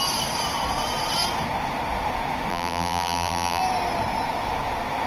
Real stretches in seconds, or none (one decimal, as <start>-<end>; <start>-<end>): 0.0-2.5; 3.6-5.1